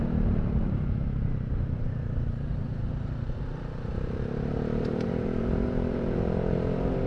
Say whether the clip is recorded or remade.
remade